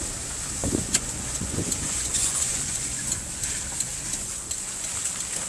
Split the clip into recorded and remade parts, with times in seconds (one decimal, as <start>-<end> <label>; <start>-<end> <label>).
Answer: 0.0-0.6 recorded; 0.6-3.4 remade; 3.4-4.2 recorded; 4.2-4.9 remade; 4.9-5.5 recorded